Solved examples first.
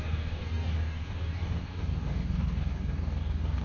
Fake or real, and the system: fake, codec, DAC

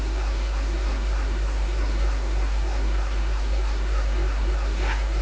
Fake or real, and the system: fake, codec, SNAC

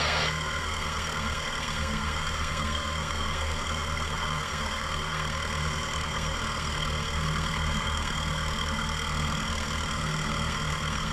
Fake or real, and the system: fake, codec, SNAC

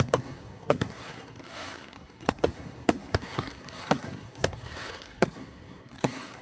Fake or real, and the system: fake, codec, SNAC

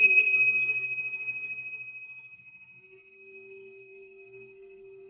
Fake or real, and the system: fake, codec, SNAC